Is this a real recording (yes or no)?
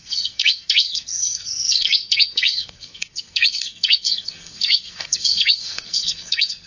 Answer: no